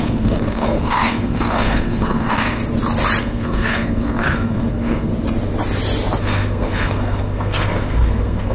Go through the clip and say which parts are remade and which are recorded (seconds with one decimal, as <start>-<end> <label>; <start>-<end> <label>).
0.0-2.6 remade; 2.6-3.2 recorded; 3.2-5.1 remade; 5.1-6.2 recorded; 6.2-8.5 remade